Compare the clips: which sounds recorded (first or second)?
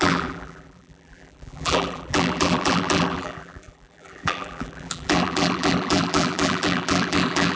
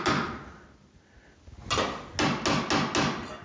second